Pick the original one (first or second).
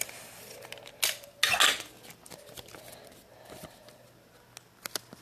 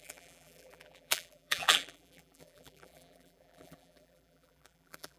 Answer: first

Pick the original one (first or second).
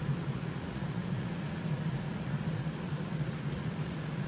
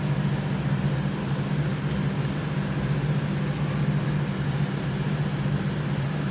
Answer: second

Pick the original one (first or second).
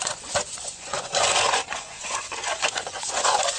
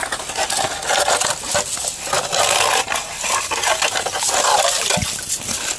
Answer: second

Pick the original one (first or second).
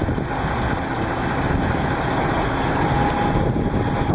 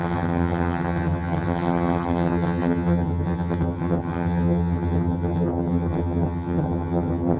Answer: first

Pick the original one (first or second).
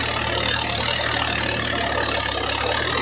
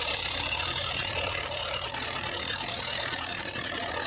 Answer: first